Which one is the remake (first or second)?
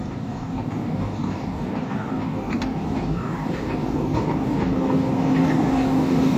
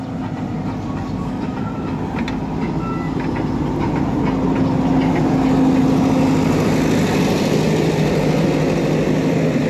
first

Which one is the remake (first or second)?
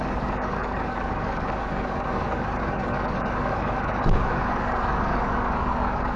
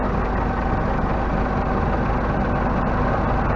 first